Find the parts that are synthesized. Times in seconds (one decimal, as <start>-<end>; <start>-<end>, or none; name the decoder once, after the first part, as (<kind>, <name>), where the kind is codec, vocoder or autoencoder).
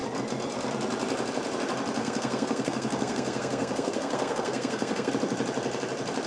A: 2.0-5.1 (codec, SNAC)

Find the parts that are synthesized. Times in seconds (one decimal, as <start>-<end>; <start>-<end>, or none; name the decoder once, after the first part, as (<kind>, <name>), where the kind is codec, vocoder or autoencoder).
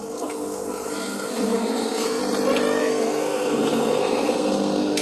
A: 0.0-2.2 (codec, SNAC); 2.8-5.0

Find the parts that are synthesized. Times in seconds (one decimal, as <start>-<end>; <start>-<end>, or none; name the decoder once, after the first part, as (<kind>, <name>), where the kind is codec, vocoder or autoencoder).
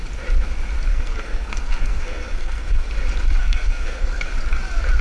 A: 0.9-2.9 (codec, SNAC); 3.4-4.3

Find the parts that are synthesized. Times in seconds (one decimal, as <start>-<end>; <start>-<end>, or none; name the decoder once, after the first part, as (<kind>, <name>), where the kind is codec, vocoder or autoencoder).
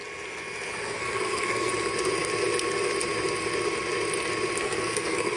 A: 1.0-1.7 (codec, SNAC); 4.6-5.4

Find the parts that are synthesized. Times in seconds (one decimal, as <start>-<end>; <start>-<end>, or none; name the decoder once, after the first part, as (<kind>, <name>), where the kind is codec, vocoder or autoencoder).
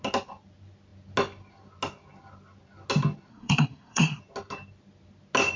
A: 3.3-4.2 (codec, SNAC)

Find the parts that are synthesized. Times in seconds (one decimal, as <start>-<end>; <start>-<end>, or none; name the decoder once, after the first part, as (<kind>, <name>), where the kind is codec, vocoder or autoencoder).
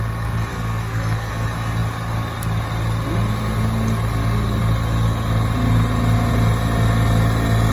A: 0.5-1.3 (codec, SNAC)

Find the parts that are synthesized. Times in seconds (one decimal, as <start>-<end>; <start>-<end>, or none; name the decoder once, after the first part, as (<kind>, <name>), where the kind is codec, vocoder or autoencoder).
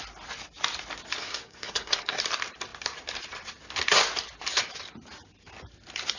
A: 1.2-2.2 (codec, SNAC)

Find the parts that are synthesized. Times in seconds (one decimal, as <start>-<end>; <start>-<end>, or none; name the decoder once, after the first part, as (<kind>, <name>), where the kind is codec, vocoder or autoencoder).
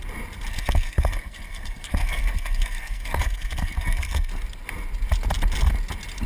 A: 0.5-4.3 (codec, SNAC)